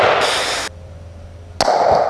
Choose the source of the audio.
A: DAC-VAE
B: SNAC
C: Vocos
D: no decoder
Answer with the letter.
D